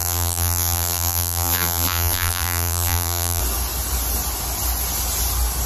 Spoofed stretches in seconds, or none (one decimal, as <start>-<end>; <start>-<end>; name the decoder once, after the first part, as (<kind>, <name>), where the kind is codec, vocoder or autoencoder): 0.0-3.4 (vocoder, BigVGAN v2)